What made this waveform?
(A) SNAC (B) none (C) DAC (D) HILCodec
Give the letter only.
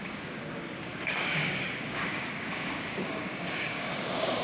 C